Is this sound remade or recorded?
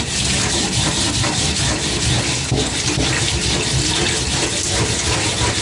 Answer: recorded